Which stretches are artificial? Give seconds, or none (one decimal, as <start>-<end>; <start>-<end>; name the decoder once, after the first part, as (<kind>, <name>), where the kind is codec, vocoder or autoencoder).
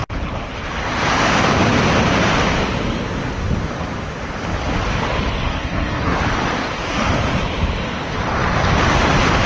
5.5-6.2 (codec, SNAC)